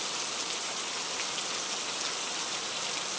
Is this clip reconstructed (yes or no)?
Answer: no